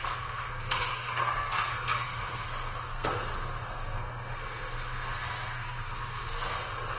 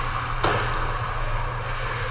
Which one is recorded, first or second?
second